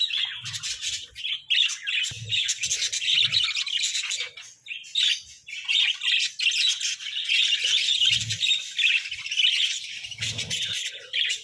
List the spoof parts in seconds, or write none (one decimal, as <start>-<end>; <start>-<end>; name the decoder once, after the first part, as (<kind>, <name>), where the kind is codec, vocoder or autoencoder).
none

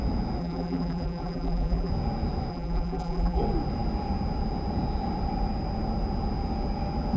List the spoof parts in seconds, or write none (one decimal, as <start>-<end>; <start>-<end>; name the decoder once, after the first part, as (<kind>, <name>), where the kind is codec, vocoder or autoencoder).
0.4-1.9 (vocoder, BigVGAN v2); 2.5-3.4

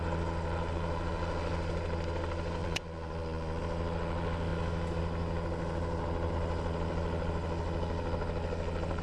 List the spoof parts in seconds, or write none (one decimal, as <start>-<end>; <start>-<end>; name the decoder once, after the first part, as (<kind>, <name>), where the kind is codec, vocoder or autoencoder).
2.6-3.6 (vocoder, Vocos)